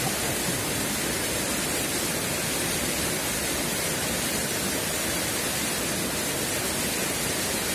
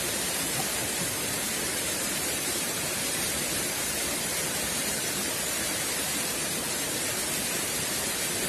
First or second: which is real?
first